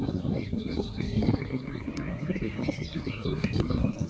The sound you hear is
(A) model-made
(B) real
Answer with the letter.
A